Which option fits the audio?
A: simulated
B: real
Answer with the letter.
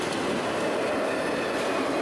B